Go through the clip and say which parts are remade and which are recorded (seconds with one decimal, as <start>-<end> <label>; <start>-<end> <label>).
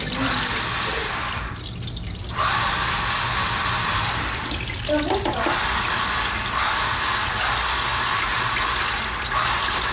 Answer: 0.0-9.9 recorded